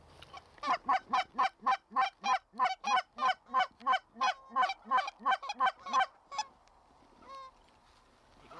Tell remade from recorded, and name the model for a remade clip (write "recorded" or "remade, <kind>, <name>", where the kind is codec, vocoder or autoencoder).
recorded